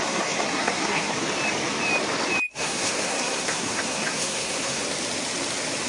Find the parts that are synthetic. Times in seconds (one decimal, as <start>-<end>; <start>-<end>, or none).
0.0-1.1; 2.5-4.8